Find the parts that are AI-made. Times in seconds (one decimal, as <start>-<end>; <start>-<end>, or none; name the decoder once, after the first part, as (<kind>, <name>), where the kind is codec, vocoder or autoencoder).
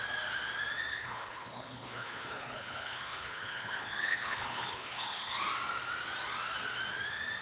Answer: 0.9-5.3 (codec, HILCodec)